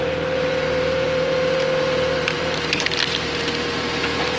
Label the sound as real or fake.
fake